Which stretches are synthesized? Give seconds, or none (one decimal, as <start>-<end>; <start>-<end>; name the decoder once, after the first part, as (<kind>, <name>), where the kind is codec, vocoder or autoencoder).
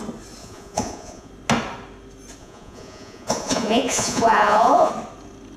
0.4-1.3 (vocoder, Vocos); 2.4-4.9